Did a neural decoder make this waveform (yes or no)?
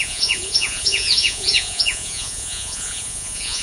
yes